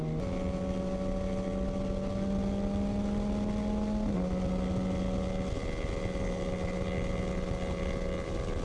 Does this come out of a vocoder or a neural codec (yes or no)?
no